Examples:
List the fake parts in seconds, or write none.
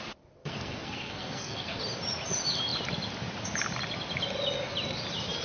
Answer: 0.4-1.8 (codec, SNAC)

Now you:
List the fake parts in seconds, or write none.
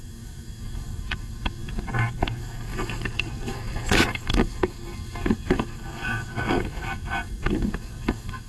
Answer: 0.0-8.5 (codec, SNAC)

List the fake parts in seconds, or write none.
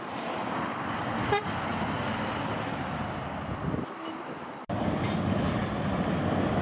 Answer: none